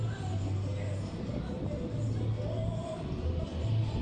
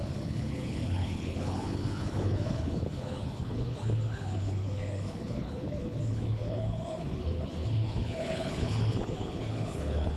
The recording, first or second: first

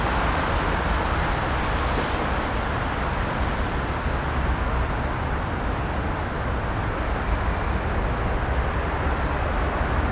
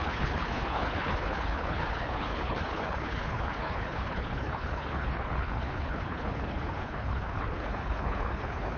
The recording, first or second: first